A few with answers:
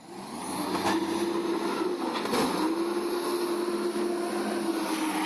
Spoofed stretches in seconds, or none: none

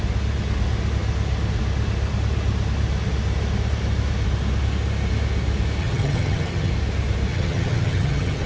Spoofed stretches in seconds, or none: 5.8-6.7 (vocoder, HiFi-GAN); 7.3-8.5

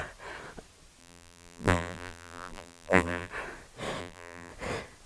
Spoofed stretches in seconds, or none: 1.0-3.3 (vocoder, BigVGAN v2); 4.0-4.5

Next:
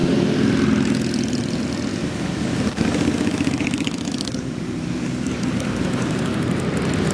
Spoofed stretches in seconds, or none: 1.9-6.2 (codec, DAC)

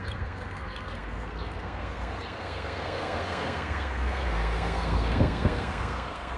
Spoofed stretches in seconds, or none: 0.0-6.4 (codec, SNAC)

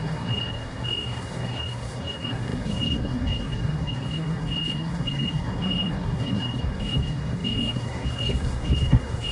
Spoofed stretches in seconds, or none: 0.0-9.3 (codec, SNAC)

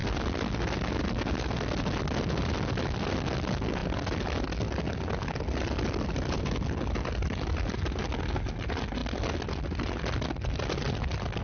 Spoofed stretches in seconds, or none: none

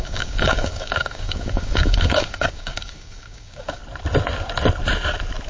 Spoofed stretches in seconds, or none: 0.0-3.8 (codec, DAC)